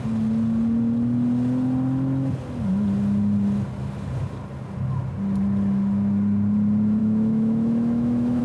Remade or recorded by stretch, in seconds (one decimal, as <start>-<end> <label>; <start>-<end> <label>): 0.0-7.0 recorded; 7.0-8.4 remade

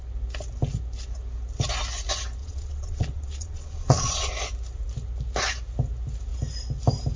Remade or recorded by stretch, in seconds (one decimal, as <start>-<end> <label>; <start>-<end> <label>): 0.0-2.4 recorded; 2.4-4.3 remade; 4.3-7.2 recorded